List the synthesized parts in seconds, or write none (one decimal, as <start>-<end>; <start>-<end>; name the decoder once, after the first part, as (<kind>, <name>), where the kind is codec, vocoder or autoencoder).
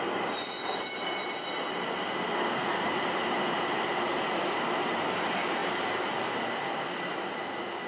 5.6-6.1 (vocoder, BigVGAN v2)